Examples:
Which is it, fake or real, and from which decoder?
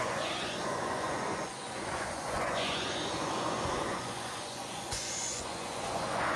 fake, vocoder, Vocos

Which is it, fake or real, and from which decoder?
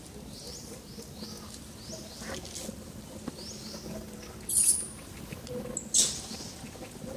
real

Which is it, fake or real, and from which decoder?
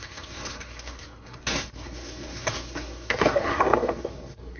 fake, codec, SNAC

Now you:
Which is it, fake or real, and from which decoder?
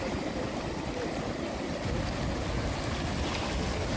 real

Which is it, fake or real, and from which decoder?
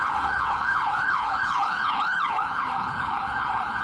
fake, codec, HILCodec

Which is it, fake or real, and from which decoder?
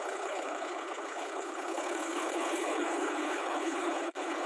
fake, codec, HILCodec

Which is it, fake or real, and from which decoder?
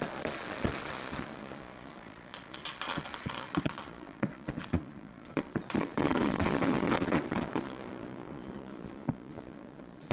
fake, vocoder, Vocos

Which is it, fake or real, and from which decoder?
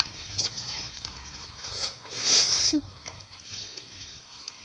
fake, codec, SNAC